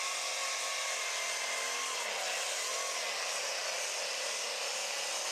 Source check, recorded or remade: recorded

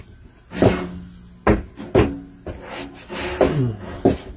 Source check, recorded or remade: recorded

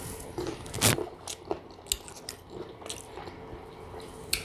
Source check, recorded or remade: recorded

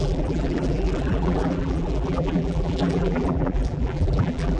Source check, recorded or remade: remade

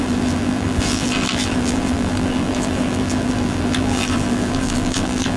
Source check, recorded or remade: remade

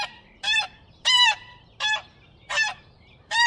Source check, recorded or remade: remade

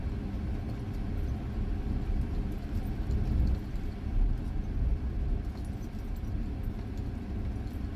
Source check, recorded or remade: recorded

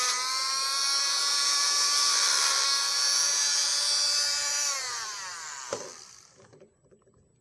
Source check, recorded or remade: remade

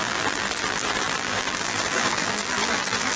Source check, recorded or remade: remade